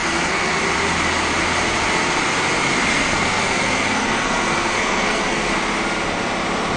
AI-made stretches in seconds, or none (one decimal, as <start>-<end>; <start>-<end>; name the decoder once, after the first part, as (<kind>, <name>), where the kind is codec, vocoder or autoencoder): 0.0-0.6 (codec, SNAC); 2.9-5.5